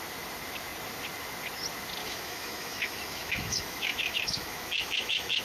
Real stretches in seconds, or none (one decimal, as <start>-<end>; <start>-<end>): 0.0-2.0